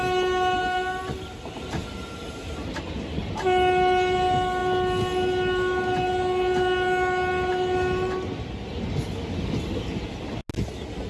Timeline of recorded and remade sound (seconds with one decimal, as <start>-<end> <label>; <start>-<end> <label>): 0.0-11.1 recorded